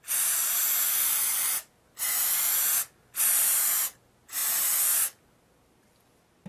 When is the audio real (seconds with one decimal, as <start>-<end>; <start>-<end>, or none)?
0.0-6.5